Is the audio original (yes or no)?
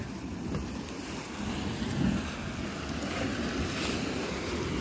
yes